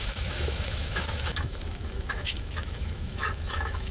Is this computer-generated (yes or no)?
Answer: yes